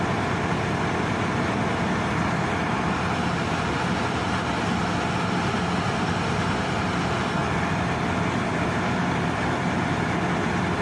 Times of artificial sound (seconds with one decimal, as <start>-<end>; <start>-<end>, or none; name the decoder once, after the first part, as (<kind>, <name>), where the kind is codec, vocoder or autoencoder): none